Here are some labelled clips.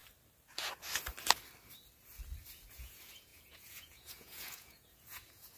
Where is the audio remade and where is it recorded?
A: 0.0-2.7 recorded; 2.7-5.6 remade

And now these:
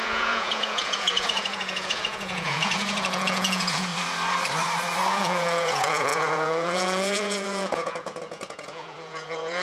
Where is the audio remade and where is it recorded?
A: 0.0-3.9 remade; 3.9-5.1 recorded; 5.1-9.6 remade

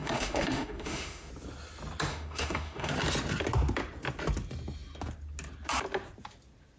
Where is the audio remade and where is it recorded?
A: 0.0-1.3 remade; 1.3-2.1 recorded; 2.1-2.9 remade; 2.9-6.8 recorded